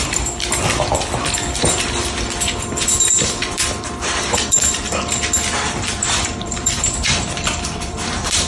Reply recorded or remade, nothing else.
remade